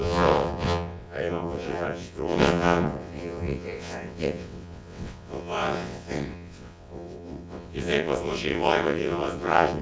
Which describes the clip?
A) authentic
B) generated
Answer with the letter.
B